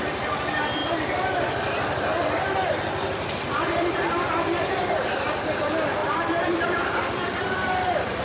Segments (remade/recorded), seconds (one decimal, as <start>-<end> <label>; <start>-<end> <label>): 0.0-6.0 recorded; 6.0-8.2 remade